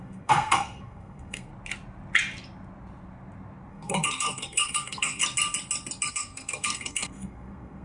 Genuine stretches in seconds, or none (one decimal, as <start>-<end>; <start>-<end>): 1.5-3.7; 5.2-6.1